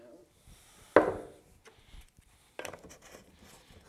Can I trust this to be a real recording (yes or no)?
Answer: yes